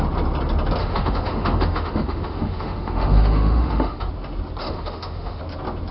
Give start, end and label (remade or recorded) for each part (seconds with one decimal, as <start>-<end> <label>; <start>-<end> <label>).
0.0-0.8 recorded; 0.8-4.1 remade; 4.1-4.6 recorded; 4.6-5.4 remade; 5.4-5.9 recorded